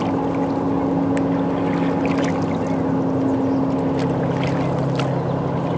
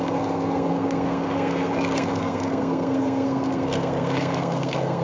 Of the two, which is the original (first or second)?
first